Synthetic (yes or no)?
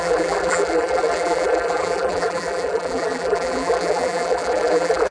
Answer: yes